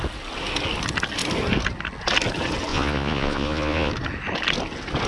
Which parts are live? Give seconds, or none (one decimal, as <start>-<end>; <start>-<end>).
0.0-2.7; 3.9-5.1